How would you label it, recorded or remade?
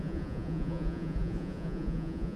remade